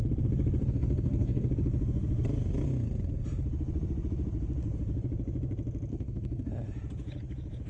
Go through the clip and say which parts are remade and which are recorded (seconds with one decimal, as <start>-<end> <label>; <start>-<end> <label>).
0.0-0.6 recorded; 0.6-1.5 remade; 1.5-5.9 recorded; 5.9-6.5 remade; 6.5-7.7 recorded